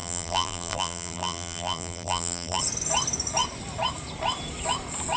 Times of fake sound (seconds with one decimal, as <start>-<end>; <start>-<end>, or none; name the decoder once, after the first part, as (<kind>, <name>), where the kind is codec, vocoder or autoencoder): 0.0-2.6 (vocoder, BigVGAN v2)